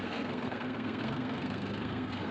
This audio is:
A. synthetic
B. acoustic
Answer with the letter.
A